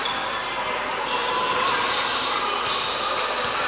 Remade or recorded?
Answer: recorded